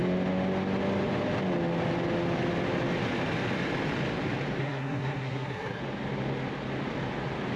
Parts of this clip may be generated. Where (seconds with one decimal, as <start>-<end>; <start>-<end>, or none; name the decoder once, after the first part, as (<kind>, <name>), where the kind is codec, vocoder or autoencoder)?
4.6-5.8 (codec, SNAC)